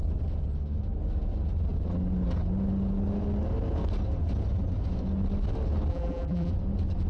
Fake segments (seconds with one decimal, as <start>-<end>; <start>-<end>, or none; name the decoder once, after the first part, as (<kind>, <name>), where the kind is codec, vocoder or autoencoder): 5.9-6.5 (vocoder, BigVGAN v2)